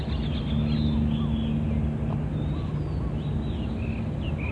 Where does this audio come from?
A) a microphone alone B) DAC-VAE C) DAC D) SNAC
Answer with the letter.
A